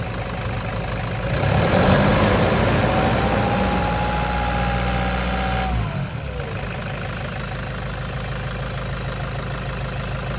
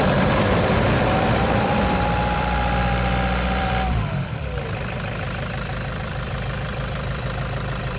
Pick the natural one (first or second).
first